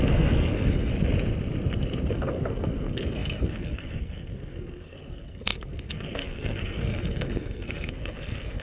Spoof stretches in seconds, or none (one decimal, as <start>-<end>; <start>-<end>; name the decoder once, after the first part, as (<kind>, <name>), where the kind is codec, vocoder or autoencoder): 0.0-0.9 (codec, SNAC); 2.1-8.6

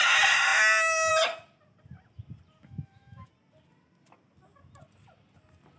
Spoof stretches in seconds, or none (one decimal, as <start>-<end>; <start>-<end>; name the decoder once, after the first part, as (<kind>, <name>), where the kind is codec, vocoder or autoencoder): 2.6-3.3 (autoencoder, DAC-VAE)

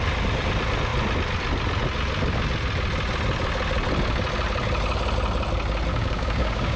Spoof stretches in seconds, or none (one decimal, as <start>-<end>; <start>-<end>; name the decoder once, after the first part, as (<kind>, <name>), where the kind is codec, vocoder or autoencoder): 5.9-6.8 (codec, DAC)